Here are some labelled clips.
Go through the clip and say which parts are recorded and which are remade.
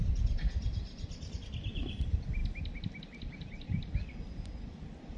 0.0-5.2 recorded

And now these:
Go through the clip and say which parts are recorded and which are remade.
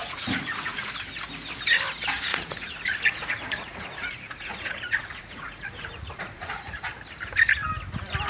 0.0-0.9 remade; 0.9-2.3 recorded; 2.3-6.9 remade; 6.9-8.3 recorded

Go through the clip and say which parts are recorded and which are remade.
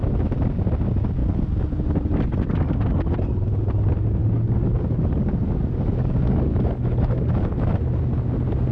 0.0-4.2 recorded; 4.2-7.8 remade; 7.8-8.7 recorded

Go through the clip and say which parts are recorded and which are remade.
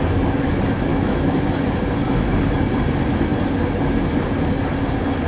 0.0-0.9 recorded; 0.9-1.5 remade; 1.5-5.3 recorded